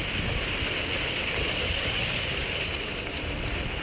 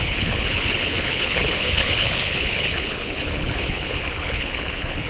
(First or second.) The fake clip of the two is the second